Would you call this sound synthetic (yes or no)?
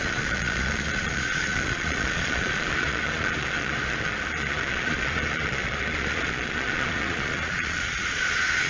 yes